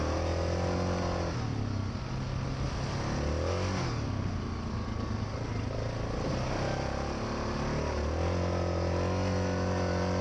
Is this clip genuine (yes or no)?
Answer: yes